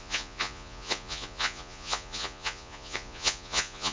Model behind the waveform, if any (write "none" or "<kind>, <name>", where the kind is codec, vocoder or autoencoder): vocoder, Vocos